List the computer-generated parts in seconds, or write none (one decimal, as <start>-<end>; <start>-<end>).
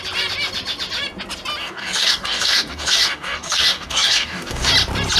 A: 1.6-4.7